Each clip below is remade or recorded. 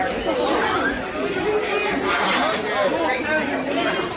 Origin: remade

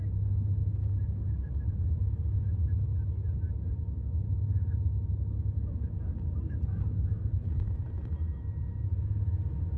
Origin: recorded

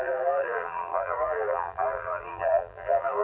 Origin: remade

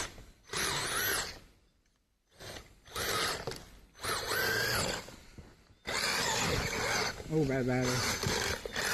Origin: recorded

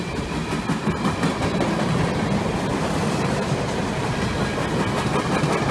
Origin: recorded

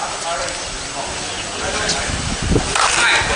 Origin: recorded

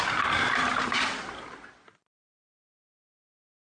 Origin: remade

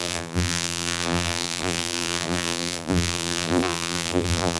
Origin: remade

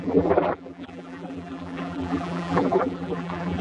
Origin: remade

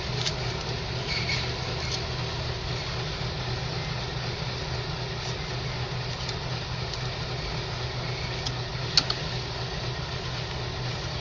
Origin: recorded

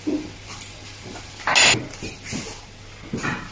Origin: recorded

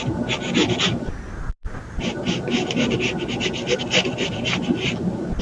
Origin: remade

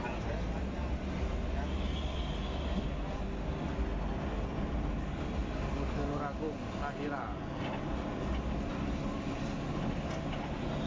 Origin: recorded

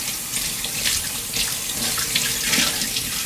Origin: remade